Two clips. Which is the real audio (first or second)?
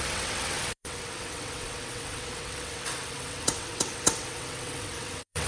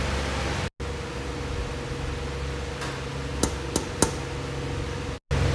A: second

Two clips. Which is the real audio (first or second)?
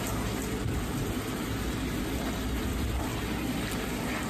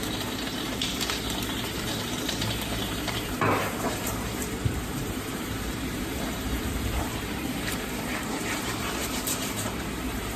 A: first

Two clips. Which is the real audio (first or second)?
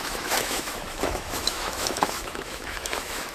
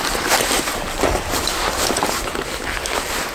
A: second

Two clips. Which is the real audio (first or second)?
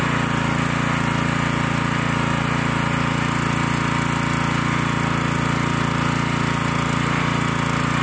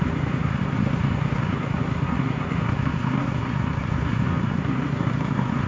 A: first